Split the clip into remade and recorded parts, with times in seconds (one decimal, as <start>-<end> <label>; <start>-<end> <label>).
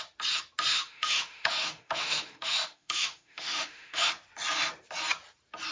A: 0.0-0.7 recorded; 0.7-4.1 remade; 4.1-5.7 recorded